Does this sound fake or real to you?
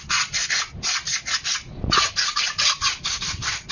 real